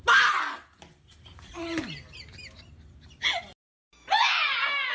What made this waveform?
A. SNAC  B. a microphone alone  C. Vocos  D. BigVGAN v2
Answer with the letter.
B